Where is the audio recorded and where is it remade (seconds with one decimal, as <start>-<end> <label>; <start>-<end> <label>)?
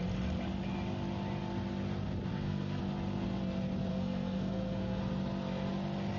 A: 0.0-2.3 recorded; 2.3-2.8 remade; 2.8-3.9 recorded; 3.9-5.0 remade; 5.0-6.2 recorded